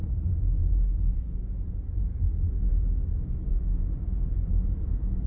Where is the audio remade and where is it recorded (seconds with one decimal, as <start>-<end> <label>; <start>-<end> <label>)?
0.0-5.3 remade